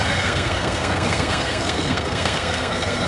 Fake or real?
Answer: fake